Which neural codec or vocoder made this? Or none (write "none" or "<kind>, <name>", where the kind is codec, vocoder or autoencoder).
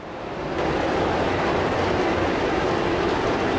none